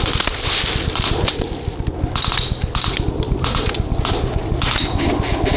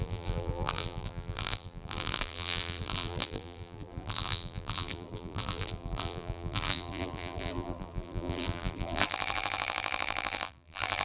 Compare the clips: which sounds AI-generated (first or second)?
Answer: second